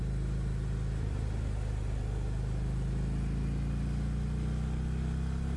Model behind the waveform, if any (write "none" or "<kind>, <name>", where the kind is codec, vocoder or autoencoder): none